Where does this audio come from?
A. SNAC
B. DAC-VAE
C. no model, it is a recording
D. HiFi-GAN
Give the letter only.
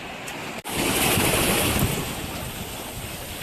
C